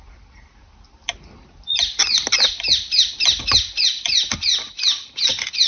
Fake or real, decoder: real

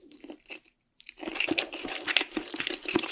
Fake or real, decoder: fake, vocoder, BigVGAN v2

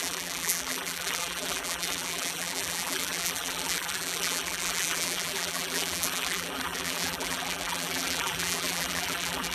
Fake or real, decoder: fake, vocoder, BigVGAN v2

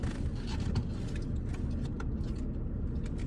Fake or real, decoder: real